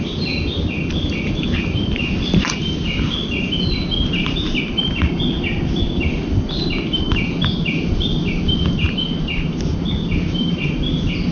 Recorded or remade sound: recorded